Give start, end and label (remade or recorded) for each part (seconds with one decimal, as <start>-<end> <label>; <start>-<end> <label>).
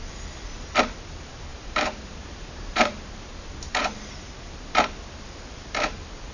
0.0-1.5 recorded; 1.5-3.3 remade; 3.3-6.3 recorded